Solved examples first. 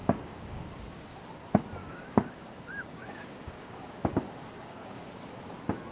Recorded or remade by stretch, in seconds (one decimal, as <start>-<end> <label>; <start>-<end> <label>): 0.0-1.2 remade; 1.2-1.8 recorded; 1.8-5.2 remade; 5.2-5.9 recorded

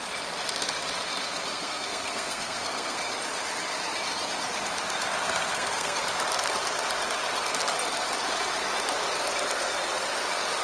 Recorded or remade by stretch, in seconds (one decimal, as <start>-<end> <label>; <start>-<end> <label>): 0.0-1.5 recorded; 1.5-3.0 remade; 3.0-5.5 recorded; 5.5-6.0 remade; 6.0-10.6 recorded

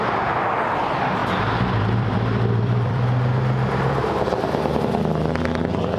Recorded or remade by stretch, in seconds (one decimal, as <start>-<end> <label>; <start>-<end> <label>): 0.0-1.2 recorded; 1.2-4.8 remade; 4.8-6.0 recorded